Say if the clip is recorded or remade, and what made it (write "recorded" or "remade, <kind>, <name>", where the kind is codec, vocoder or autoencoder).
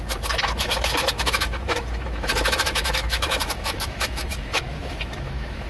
remade, autoencoder, DAC-VAE